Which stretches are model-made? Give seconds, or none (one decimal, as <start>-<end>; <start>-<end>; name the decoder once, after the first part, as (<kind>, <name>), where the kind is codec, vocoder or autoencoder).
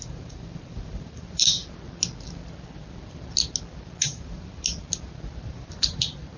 0.0-1.6 (vocoder, BigVGAN v2); 4.0-4.7; 5.5-6.4